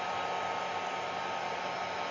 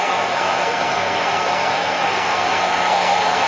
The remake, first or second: second